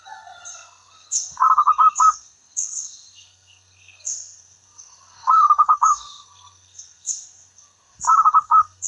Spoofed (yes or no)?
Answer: yes